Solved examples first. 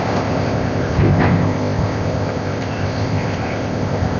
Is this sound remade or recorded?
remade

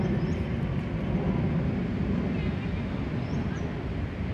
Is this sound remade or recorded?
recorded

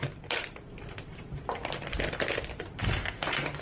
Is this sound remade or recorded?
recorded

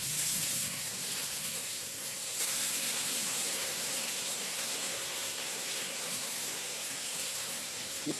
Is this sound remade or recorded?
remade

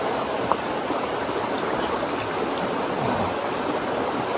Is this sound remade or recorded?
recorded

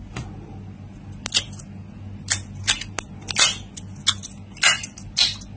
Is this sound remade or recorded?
recorded